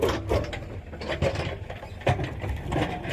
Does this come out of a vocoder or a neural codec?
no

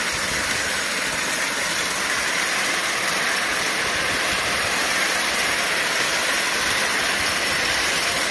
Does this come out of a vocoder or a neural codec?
no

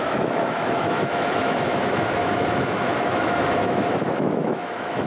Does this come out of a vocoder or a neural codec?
yes